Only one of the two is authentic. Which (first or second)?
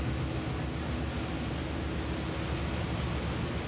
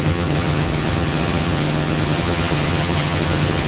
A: first